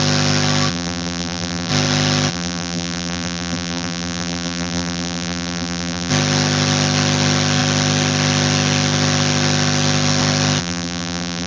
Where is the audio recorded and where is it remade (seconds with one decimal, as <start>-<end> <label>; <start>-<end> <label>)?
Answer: 0.0-0.7 recorded; 0.7-1.7 remade; 1.7-2.3 recorded; 2.3-6.1 remade; 6.1-10.6 recorded; 10.6-11.5 remade